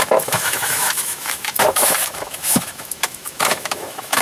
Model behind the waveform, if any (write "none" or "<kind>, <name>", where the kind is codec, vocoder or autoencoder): autoencoder, DAC-VAE